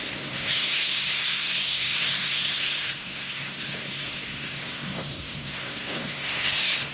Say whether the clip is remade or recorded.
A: remade